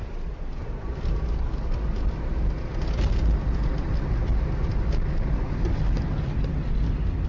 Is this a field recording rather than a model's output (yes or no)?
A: yes